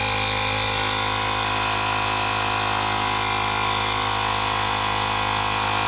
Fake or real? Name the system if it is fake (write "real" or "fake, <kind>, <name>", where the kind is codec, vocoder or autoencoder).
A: real